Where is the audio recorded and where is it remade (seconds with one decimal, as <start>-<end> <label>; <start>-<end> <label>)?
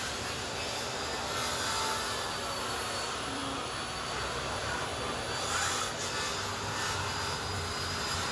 0.0-1.4 remade; 1.4-2.6 recorded; 2.6-3.4 remade; 3.4-4.0 recorded; 4.0-4.9 remade; 4.9-6.7 recorded; 6.7-8.3 remade